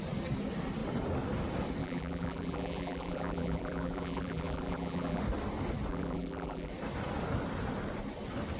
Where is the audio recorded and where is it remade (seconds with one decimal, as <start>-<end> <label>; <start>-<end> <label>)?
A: 0.0-1.8 recorded; 1.8-5.2 remade; 5.2-5.9 recorded; 5.9-6.7 remade; 6.7-8.6 recorded